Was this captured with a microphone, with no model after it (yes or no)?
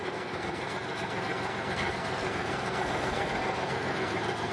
no